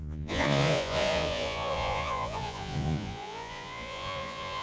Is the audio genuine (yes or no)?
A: no